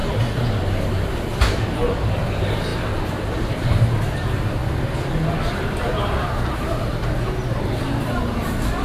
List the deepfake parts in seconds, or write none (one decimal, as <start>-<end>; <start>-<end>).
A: 1.4-4.6; 5.5-6.9; 7.7-8.8